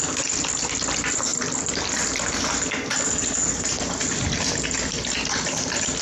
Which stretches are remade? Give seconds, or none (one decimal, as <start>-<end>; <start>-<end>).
none